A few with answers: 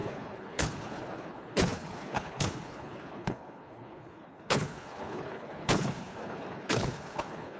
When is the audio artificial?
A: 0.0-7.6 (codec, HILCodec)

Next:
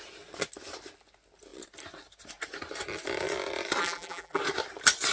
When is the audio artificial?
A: 3.8-4.4 (vocoder, BigVGAN v2)

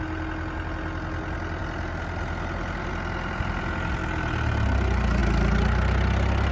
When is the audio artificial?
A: none

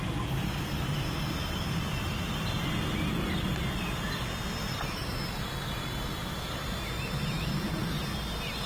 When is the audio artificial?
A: none